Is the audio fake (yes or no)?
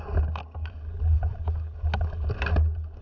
no